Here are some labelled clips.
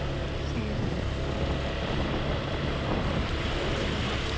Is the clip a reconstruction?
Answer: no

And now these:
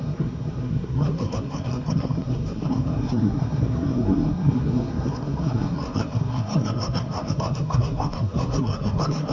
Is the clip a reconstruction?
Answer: yes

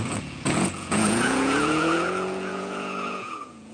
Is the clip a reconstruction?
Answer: yes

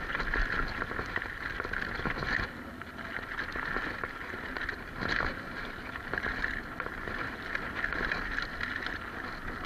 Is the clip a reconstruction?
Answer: no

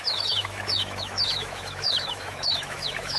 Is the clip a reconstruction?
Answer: yes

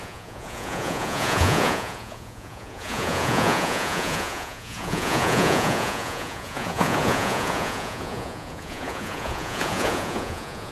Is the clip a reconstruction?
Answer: yes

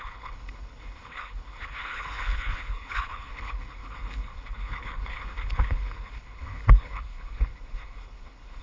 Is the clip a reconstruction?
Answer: yes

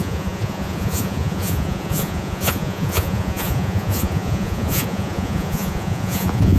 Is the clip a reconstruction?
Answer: yes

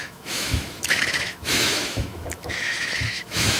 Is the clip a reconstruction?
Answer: yes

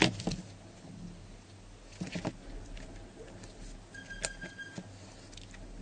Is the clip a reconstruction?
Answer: no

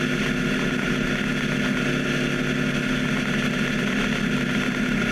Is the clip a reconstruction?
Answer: no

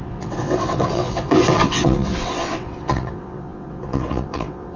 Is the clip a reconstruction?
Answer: yes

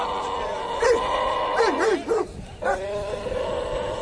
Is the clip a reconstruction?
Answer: no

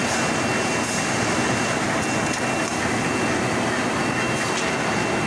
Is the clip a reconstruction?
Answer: no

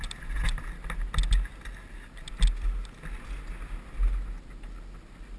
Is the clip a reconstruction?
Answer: no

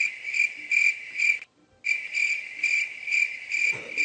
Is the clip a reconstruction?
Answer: no